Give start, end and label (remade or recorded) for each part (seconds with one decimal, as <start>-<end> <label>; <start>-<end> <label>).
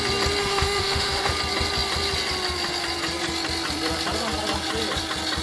0.0-0.4 recorded; 0.4-1.3 remade; 1.3-5.4 recorded